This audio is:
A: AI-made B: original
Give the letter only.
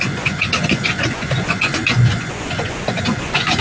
A